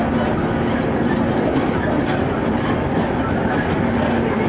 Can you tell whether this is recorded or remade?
recorded